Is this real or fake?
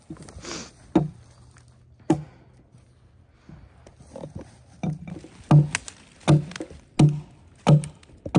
real